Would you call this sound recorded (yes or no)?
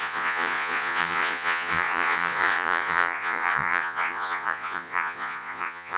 no